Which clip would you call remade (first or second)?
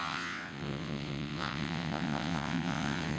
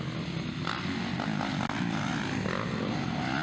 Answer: first